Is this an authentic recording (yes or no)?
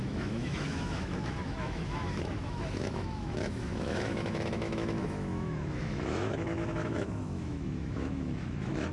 no